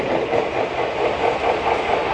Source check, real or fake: real